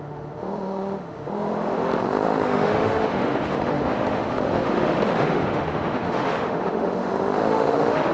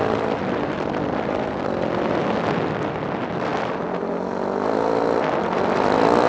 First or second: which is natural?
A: second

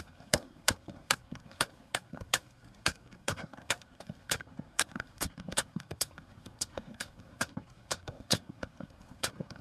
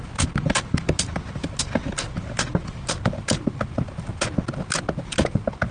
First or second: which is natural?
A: second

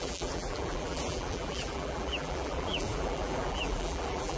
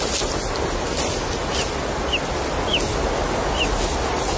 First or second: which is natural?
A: second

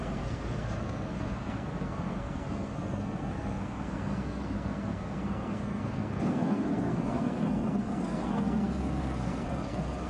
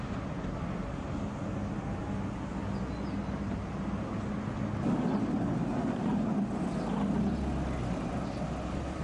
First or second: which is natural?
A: second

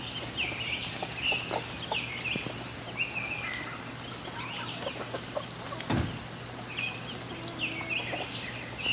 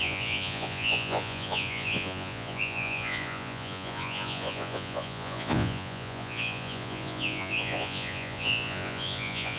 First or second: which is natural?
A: first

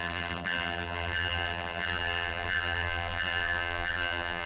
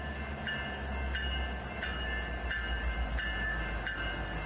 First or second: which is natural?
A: second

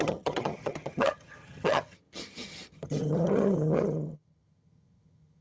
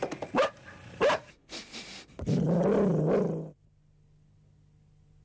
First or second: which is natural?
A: second